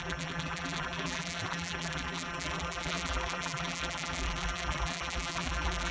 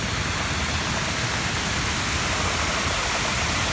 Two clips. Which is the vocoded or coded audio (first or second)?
first